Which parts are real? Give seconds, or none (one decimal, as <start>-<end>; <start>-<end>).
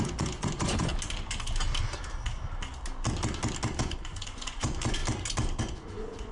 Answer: 0.9-3.8; 5.0-5.6